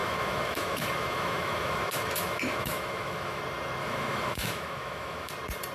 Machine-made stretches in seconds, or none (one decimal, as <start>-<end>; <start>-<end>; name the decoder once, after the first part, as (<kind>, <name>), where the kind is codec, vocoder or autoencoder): 0.0-3.4 (autoencoder, DAC-VAE); 3.8-5.3